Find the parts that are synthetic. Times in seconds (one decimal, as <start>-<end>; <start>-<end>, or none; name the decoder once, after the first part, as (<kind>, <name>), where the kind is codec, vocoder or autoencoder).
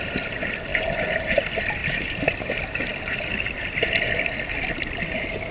0.7-1.4 (vocoder, BigVGAN v2); 1.8-2.4